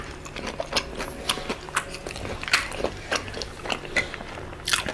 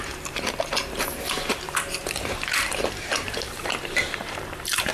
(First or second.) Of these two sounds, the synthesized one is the second